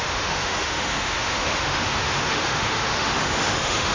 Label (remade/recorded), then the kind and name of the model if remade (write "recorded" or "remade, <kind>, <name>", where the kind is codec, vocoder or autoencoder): remade, autoencoder, DAC-VAE